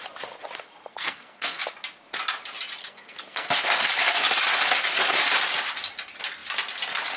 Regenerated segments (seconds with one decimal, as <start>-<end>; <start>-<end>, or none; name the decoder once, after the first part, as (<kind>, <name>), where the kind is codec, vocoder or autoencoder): 0.9-1.6 (codec, SNAC); 2.8-3.5

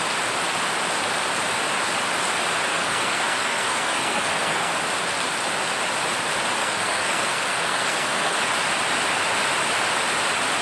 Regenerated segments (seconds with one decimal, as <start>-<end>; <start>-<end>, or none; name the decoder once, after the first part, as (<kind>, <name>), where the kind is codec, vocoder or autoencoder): 2.7-4.7 (codec, SNAC); 6.6-8.4

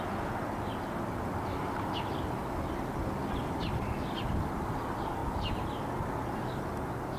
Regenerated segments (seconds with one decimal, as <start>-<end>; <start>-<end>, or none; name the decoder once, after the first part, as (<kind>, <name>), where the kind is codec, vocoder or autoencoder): none